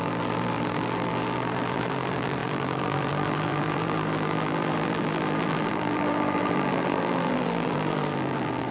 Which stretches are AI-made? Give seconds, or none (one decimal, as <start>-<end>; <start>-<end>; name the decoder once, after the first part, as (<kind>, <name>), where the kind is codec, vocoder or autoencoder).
0.0-8.7 (vocoder, BigVGAN v2)